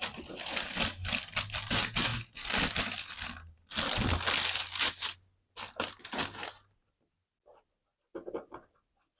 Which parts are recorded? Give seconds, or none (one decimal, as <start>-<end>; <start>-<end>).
0.0-9.2